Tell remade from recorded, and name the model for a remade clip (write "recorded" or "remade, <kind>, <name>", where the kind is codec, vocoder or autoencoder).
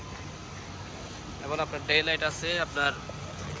recorded